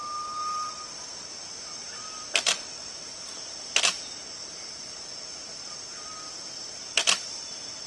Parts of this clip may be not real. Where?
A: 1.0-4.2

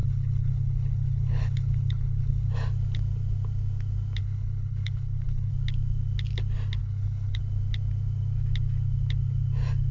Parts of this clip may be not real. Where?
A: 0.0-2.5; 4.2-5.5; 6.8-7.4

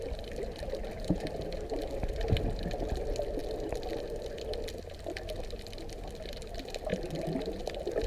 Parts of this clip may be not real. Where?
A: none

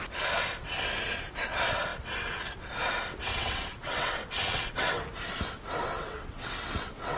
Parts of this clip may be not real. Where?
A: 3.3-5.0; 5.8-7.2

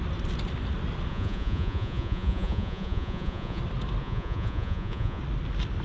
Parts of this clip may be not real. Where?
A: 1.1-3.6; 4.0-5.2